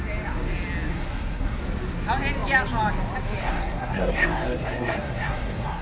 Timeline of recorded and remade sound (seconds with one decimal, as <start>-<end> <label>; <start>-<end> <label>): 0.0-0.9 recorded; 0.9-1.6 remade; 1.6-3.4 recorded; 3.4-5.8 remade